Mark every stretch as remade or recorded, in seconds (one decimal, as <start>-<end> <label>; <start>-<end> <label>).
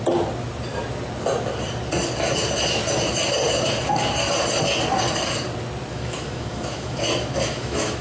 0.0-5.9 recorded; 5.9-8.0 remade